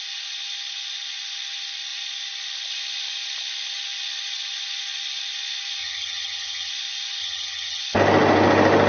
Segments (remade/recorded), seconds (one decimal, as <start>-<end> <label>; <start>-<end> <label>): 0.0-5.8 recorded; 5.8-6.7 remade; 6.7-7.2 recorded; 7.2-7.8 remade; 7.8-8.9 recorded

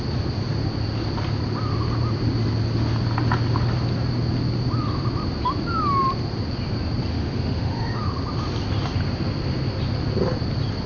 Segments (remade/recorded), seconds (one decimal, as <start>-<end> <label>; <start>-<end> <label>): 0.0-7.1 recorded; 7.1-8.0 remade; 8.0-10.9 recorded